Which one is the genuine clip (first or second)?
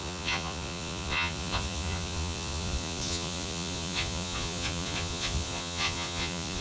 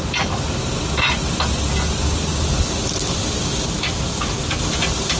second